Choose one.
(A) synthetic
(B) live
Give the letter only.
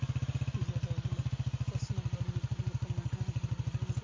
B